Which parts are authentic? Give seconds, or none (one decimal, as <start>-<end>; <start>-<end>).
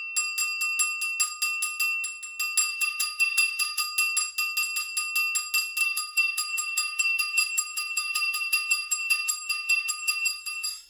0.0-2.7; 3.8-5.8